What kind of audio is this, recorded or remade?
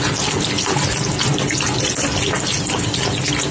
recorded